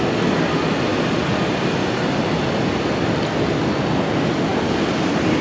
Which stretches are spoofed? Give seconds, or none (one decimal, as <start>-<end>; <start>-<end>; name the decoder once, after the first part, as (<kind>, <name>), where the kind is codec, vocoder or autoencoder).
none